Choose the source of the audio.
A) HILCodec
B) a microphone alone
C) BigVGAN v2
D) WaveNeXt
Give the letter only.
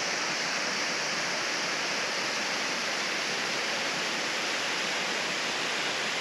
C